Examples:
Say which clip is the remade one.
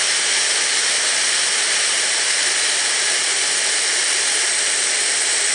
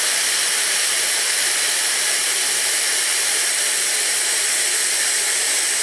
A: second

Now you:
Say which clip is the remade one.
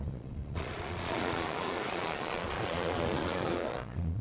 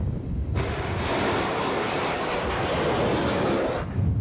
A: first